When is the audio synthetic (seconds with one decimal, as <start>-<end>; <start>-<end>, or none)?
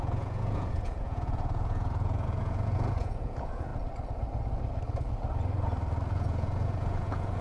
0.0-3.7; 6.1-7.4